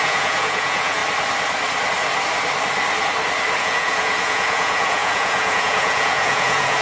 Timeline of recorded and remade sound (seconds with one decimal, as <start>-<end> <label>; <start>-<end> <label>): 0.0-1.0 remade; 1.0-3.6 recorded; 3.6-6.8 remade